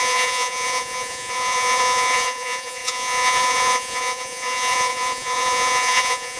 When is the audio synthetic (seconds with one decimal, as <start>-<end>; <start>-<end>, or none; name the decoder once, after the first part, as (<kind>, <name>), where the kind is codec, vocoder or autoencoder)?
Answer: 0.0-6.4 (vocoder, Vocos)